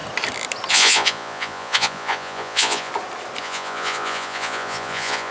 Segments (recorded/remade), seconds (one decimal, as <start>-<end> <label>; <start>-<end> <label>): 0.0-0.7 recorded; 0.7-2.9 remade; 2.9-3.4 recorded; 3.4-5.3 remade